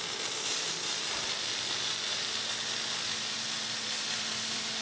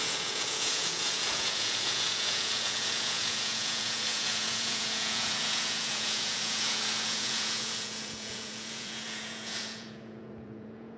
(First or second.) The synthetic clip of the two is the second